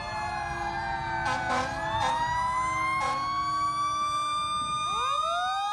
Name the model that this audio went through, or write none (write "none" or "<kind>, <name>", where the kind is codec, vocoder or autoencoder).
none